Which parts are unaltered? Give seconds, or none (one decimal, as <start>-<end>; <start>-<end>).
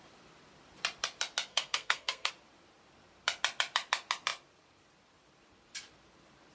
0.0-1.5; 2.3-6.5